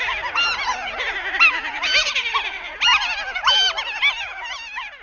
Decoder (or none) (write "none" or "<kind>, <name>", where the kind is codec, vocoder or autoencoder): none